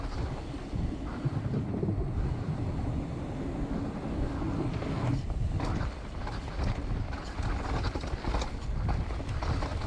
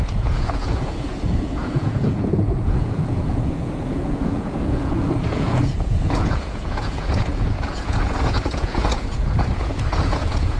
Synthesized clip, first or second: second